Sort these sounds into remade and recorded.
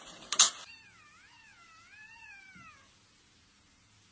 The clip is recorded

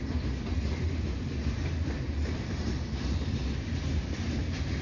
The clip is recorded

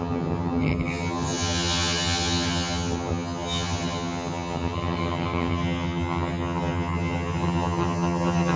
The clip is remade